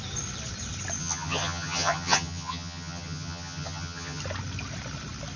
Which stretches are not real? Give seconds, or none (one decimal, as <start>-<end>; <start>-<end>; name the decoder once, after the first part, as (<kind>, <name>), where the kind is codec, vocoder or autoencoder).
1.0-4.2 (vocoder, HiFi-GAN)